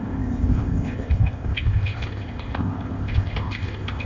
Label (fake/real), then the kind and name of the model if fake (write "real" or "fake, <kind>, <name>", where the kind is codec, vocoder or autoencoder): fake, codec, ZipCodec